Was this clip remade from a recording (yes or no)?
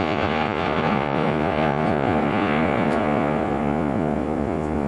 yes